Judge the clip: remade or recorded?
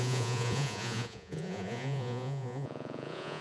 remade